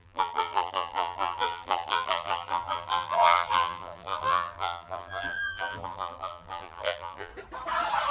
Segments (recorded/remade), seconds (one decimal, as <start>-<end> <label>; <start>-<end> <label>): 0.0-7.3 remade; 7.3-8.1 recorded